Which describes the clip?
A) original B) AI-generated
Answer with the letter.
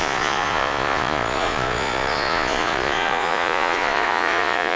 B